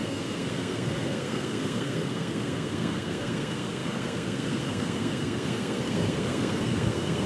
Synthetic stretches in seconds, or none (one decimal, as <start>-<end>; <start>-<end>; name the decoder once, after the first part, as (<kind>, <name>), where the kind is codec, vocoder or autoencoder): 0.0-7.3 (codec, SNAC)

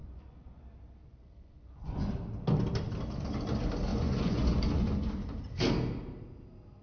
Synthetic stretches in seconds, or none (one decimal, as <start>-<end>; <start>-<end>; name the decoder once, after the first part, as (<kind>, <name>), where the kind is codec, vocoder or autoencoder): 0.0-0.6 (vocoder, Vocos); 1.0-2.1; 3.9-5.1

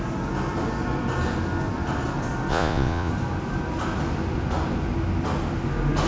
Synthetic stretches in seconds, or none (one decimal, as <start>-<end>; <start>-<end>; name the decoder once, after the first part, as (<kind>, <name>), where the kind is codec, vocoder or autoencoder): 2.5-3.1 (vocoder, Vocos)

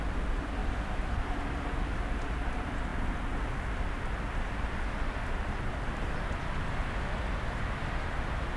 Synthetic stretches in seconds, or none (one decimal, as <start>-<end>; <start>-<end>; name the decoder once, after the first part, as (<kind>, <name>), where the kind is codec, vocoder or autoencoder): 0.6-1.4 (vocoder, BigVGAN v2)

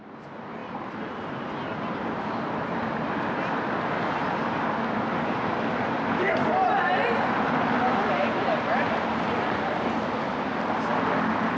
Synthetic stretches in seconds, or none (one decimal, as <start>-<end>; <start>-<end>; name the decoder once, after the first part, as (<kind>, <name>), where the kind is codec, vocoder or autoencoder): none

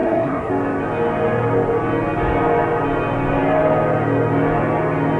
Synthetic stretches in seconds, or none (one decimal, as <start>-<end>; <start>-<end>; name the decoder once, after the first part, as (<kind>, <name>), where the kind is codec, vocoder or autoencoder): 0.0-0.5 (codec, SNAC)

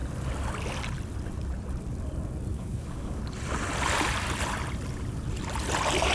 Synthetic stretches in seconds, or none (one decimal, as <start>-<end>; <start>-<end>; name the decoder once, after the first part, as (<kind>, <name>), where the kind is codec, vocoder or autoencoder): 2.5-3.2 (codec, DAC)

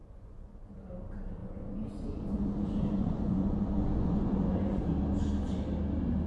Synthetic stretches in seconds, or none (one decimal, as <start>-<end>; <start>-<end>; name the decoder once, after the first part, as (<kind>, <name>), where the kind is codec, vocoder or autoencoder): 0.0-0.8 (vocoder, Vocos); 1.4-4.8